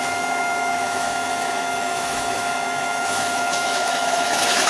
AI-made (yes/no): yes